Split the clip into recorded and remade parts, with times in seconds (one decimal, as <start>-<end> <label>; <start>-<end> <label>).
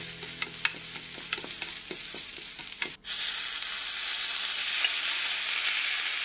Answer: 0.0-6.2 recorded